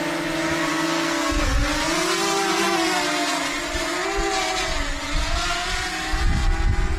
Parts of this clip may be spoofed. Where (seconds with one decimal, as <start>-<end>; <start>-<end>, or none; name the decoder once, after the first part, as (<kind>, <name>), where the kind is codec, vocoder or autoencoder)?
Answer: 0.7-1.5 (codec, SNAC)